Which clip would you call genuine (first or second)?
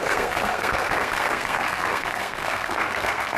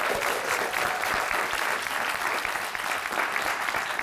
second